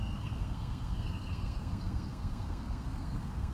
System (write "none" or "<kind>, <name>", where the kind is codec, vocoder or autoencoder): codec, SNAC